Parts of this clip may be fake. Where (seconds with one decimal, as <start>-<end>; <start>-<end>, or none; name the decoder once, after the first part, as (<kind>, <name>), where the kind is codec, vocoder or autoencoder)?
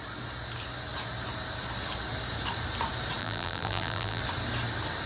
3.2-4.2 (vocoder, BigVGAN v2)